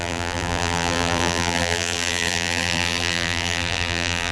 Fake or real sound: fake